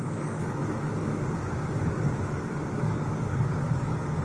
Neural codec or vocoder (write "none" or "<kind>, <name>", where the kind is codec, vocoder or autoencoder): codec, DAC